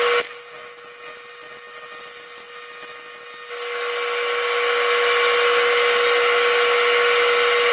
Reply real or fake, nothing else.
real